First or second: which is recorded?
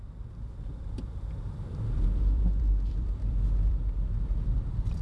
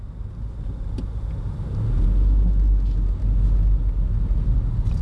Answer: second